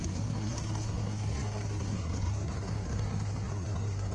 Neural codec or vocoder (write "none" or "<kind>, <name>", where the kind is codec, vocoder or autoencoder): codec, SNAC